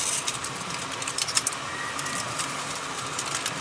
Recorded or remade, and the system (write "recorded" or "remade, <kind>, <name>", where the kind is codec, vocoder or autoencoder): remade, vocoder, BigVGAN v2